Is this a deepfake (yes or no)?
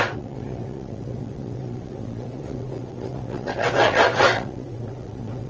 yes